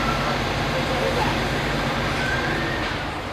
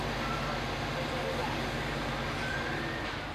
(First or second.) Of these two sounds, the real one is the second